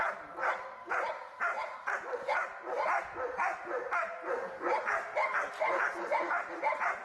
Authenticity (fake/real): real